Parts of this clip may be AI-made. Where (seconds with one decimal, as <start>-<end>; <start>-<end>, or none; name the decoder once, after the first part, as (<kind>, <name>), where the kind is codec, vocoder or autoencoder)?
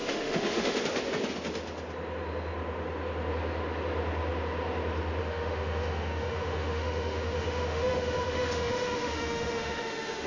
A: 0.0-0.8 (autoencoder, DAC-VAE); 5.2-10.3